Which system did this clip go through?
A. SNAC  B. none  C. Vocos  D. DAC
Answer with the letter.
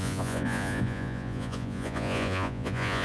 C